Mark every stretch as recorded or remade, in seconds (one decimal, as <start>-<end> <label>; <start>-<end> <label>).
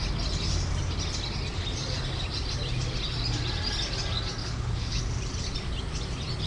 0.0-4.4 recorded; 4.4-5.0 remade; 5.0-6.5 recorded